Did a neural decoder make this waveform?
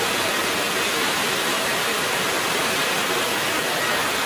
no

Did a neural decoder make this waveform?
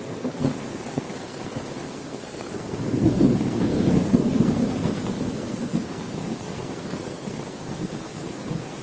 yes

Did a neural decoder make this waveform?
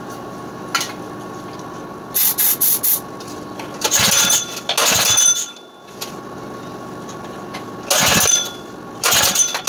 no